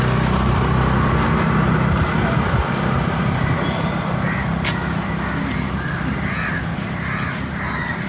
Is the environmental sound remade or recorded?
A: recorded